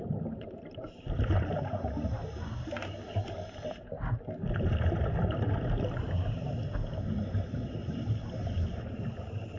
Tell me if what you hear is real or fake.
real